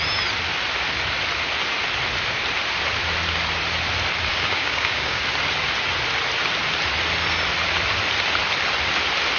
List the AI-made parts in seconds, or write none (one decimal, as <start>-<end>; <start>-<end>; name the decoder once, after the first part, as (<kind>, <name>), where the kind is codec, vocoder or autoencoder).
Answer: 4.3-5.2 (codec, DAC)